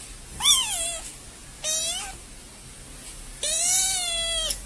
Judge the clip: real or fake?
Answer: real